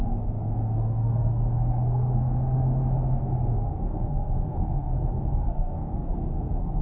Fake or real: fake